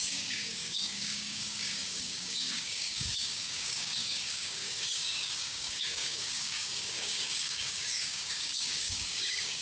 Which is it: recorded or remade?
remade